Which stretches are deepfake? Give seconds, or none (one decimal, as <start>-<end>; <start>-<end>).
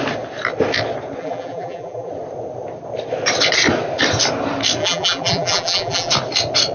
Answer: 1.2-2.1; 4.8-6.1